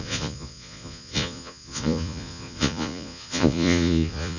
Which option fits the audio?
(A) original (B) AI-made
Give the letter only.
B